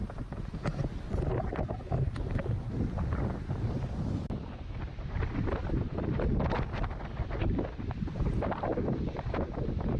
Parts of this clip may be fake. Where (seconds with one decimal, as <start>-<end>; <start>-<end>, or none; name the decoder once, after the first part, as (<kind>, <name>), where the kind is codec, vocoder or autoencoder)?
5.6-6.4 (vocoder, BigVGAN v2)

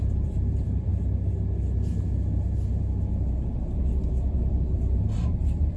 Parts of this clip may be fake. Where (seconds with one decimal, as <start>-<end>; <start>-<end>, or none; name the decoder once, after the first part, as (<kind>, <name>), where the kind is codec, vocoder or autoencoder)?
0.0-0.9 (vocoder, BigVGAN v2); 3.8-5.8